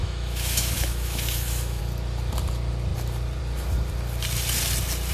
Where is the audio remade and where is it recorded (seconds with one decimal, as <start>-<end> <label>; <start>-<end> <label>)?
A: 0.0-1.8 remade; 1.8-5.1 recorded